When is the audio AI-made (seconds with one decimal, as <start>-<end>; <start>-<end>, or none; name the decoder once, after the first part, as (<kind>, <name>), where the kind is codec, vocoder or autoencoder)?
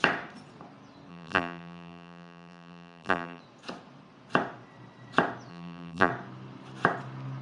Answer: 1.1-3.4 (vocoder, BigVGAN v2); 5.5-6.1